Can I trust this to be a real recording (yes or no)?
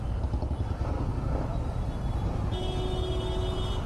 yes